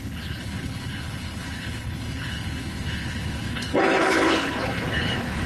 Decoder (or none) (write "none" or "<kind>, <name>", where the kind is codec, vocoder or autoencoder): codec, HILCodec